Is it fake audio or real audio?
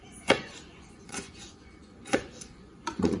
fake